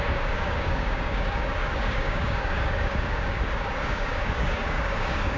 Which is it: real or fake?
fake